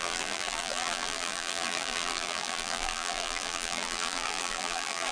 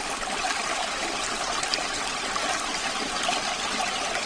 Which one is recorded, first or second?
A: second